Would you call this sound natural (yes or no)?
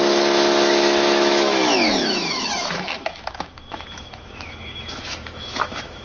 no